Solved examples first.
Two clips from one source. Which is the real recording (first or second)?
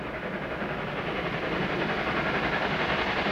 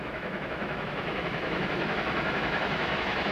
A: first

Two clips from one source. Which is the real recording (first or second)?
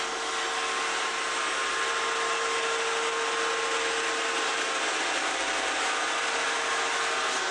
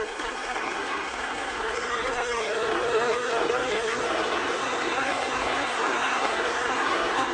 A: first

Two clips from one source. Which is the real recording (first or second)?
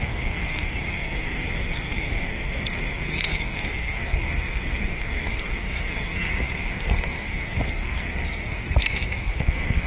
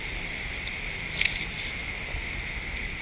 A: second